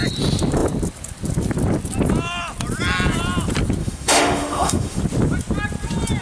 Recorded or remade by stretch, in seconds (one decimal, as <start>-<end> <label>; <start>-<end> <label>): 0.0-3.8 recorded; 3.8-5.0 remade; 5.0-6.2 recorded